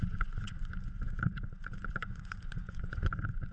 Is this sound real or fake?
fake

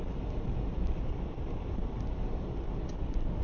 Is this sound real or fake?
fake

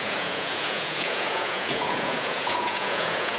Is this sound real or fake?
fake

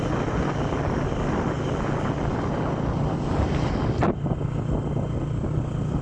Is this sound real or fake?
real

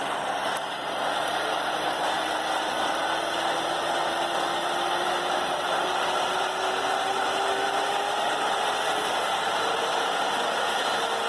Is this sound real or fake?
real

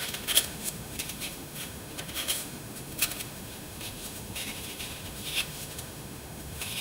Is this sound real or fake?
fake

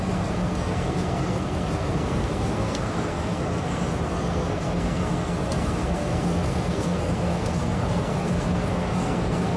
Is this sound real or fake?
fake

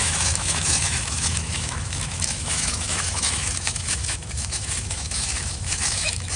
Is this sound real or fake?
fake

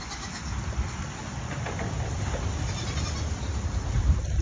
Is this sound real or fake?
real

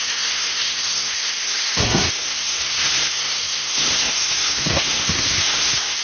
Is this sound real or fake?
fake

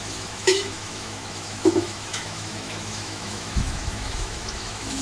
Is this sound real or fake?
fake